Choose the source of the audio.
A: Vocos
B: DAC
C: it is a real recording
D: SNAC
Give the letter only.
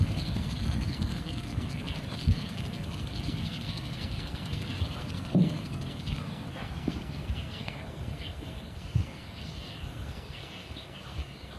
D